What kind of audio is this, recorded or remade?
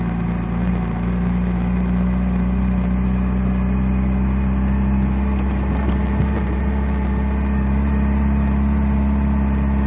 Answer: recorded